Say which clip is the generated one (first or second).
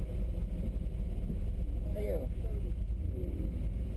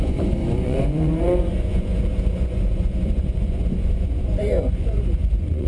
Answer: second